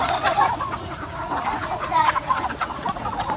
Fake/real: fake